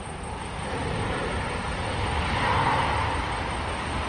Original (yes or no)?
yes